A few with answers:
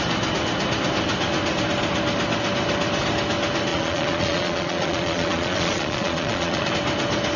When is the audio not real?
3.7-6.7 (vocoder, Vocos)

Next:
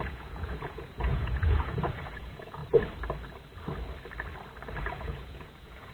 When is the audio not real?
0.0-2.6 (vocoder, Vocos); 4.8-5.9

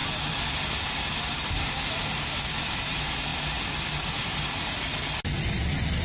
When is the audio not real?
none

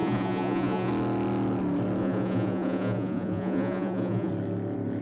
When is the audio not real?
0.0-0.9 (vocoder, Vocos); 2.0-4.3